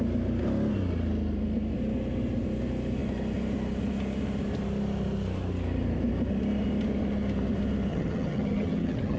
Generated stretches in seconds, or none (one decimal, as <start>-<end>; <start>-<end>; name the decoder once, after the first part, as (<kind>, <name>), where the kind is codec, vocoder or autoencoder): 7.9-9.2 (vocoder, HiFi-GAN)